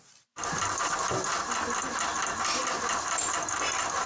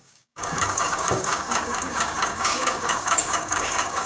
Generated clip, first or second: second